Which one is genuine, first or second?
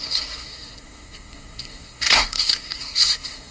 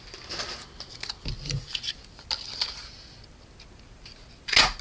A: second